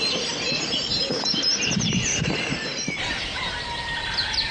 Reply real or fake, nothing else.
real